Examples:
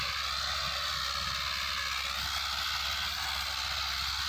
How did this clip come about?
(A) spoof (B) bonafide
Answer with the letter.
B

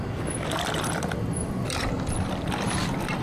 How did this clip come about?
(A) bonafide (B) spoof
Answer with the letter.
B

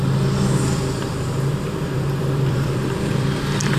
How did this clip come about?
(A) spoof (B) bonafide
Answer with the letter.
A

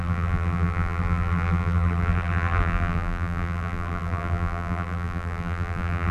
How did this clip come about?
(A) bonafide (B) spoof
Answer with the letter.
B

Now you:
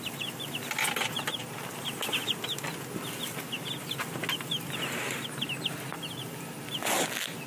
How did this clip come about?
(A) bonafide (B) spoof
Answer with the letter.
A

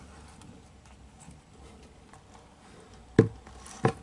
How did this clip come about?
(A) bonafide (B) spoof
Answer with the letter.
A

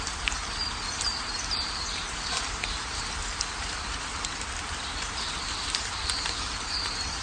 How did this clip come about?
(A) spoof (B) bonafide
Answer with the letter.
A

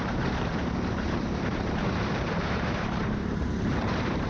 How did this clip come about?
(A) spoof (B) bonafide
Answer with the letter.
A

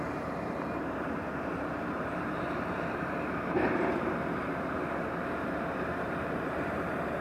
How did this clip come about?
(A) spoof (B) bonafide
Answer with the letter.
A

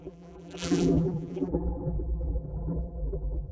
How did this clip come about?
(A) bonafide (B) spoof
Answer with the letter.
B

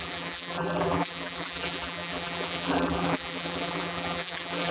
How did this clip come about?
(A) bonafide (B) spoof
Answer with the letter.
B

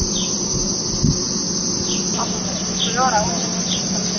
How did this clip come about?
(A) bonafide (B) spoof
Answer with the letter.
A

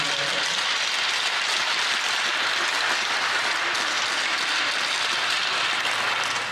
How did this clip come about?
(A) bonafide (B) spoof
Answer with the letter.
A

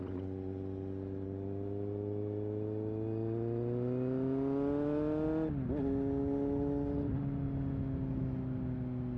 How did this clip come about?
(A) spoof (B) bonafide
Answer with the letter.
B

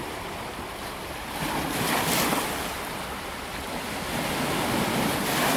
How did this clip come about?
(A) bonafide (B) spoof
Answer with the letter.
B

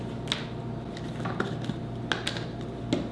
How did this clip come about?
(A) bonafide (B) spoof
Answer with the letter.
A